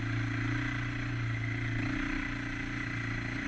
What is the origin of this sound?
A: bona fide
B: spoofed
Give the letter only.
A